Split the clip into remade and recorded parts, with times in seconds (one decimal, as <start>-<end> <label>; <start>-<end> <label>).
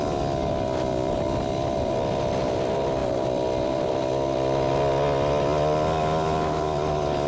0.0-7.3 recorded